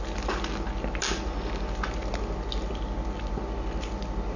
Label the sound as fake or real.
real